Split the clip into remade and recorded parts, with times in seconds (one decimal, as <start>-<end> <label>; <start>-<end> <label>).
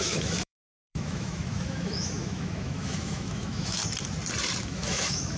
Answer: 0.0-3.8 remade; 3.8-4.6 recorded; 4.6-5.4 remade